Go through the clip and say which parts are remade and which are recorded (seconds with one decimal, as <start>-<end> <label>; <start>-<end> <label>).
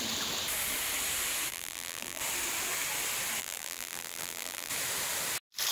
0.0-1.5 recorded; 1.5-2.2 remade; 2.2-3.4 recorded; 3.4-4.7 remade; 4.7-5.7 recorded